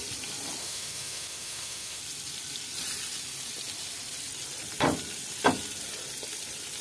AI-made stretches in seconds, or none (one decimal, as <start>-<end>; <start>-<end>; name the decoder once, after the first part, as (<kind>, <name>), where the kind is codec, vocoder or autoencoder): 0.6-2.0 (autoencoder, DAC-VAE)